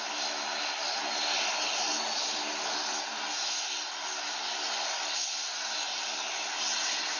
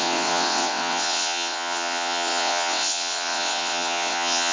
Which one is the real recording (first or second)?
first